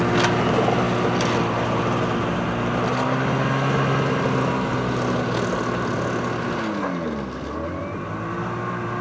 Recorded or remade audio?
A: recorded